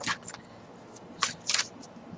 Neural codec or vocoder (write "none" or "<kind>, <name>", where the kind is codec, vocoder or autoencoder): none